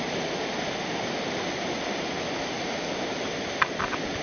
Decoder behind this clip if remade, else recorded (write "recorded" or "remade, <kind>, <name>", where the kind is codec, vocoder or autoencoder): recorded